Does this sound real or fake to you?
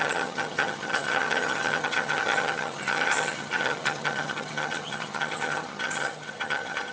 fake